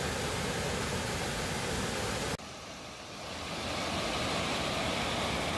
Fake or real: real